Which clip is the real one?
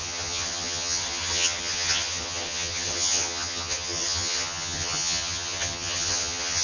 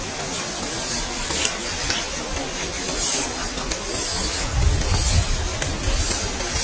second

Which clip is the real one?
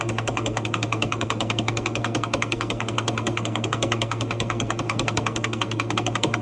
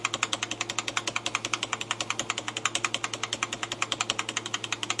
second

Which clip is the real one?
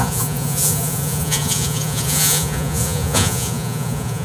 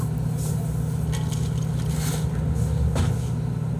second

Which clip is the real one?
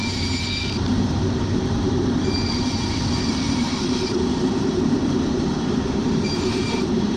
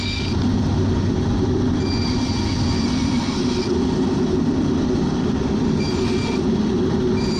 second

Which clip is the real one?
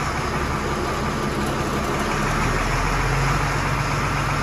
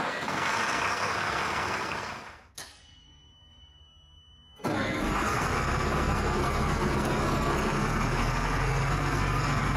first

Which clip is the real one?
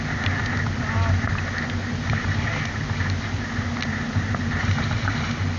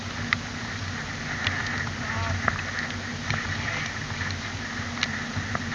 second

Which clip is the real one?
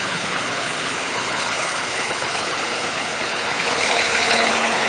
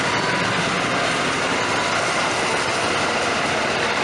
second